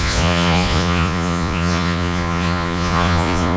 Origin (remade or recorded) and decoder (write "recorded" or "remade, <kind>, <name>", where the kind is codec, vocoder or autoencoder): remade, vocoder, Vocos